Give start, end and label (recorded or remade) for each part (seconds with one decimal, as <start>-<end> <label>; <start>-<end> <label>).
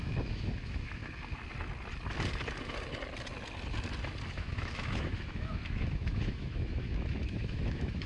0.0-1.0 remade; 1.0-4.3 recorded; 4.3-8.1 remade